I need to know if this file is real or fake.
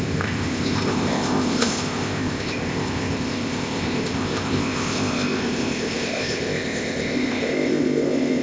fake